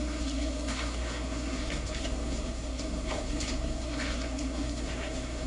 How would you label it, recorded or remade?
remade